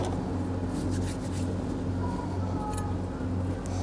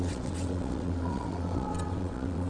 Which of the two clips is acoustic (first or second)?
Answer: first